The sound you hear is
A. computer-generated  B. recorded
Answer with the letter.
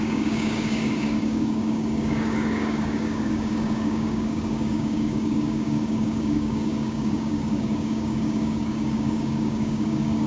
A